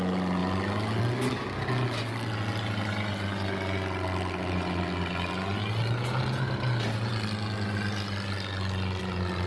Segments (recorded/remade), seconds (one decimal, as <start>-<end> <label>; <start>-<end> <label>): 0.0-9.5 recorded